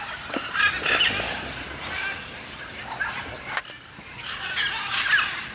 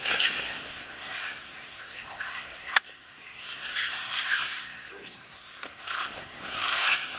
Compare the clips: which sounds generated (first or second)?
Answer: second